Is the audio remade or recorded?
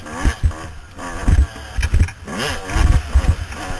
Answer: recorded